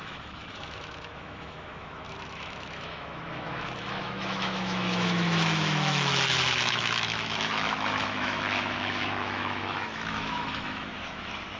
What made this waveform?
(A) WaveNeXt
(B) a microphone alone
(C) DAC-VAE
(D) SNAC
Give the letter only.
C